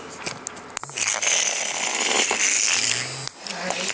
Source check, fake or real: real